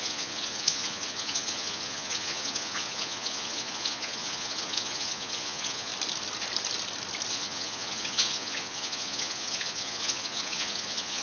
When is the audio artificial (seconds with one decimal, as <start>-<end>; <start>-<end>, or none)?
0.0-5.9; 7.3-11.2